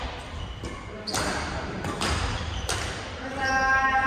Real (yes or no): yes